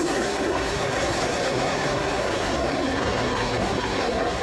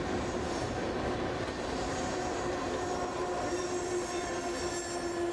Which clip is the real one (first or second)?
second